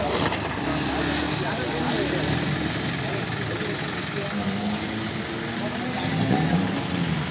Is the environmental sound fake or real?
real